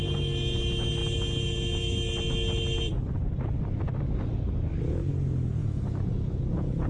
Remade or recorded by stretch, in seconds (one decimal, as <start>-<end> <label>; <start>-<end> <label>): 0.0-5.6 recorded; 5.6-6.9 remade